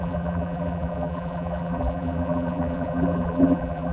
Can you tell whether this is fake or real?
fake